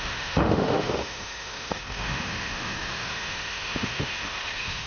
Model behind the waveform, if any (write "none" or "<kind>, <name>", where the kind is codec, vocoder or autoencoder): autoencoder, DAC-VAE